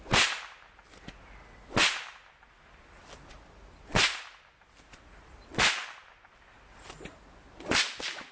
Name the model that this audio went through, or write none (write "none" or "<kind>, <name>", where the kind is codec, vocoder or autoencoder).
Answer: none